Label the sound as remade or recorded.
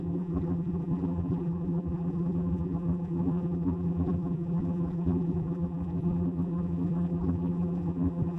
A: remade